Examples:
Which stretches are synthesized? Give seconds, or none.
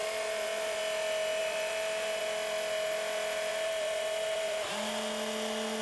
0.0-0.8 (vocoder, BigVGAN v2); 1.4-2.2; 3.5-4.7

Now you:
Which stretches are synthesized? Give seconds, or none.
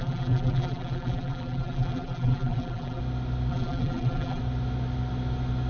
0.0-3.0 (vocoder, BigVGAN v2); 3.5-4.4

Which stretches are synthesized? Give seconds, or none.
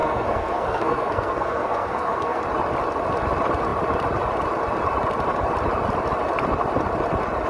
0.0-2.4 (codec, SNAC)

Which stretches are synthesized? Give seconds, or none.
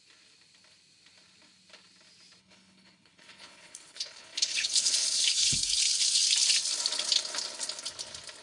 2.4-5.8 (codec, HILCodec)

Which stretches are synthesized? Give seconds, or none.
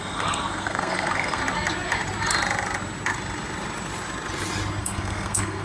0.0-1.4 (codec, SNAC); 4.8-5.6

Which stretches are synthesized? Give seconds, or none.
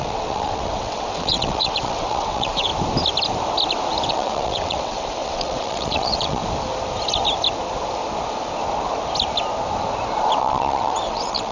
0.0-2.7 (vocoder, WaveNeXt); 4.1-6.4; 10.4-11.5